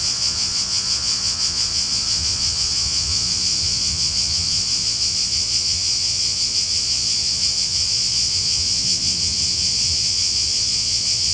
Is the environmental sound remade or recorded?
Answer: remade